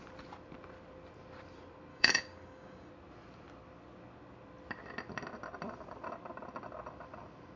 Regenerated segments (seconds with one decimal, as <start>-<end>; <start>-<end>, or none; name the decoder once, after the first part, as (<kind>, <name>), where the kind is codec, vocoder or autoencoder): 1.9-2.9 (codec, DAC)